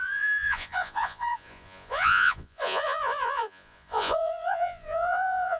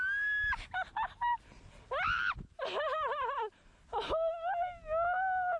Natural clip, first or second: second